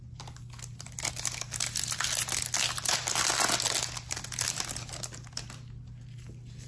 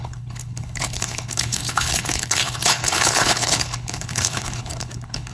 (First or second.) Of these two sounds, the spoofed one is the second